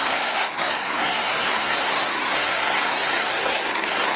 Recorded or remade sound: remade